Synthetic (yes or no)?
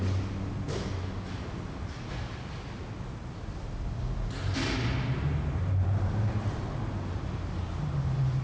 no